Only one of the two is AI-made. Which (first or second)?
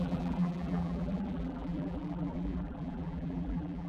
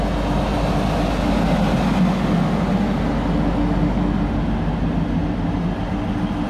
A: first